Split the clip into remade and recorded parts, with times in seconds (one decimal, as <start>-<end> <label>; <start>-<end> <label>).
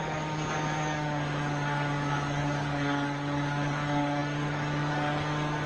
0.0-5.7 remade